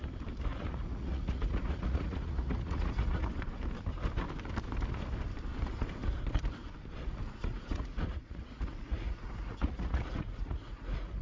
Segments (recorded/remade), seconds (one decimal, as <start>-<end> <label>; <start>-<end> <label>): 0.0-0.5 recorded; 0.5-3.3 remade; 3.3-7.4 recorded; 7.4-11.2 remade